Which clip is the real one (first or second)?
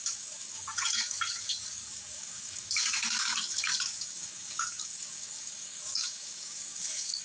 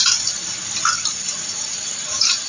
second